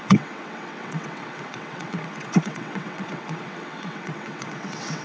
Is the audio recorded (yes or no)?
no